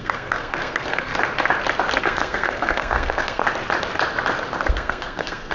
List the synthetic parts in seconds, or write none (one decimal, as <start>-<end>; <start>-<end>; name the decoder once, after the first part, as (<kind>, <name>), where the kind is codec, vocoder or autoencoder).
0.0-1.1 (codec, SNAC); 2.0-3.4; 4.7-5.5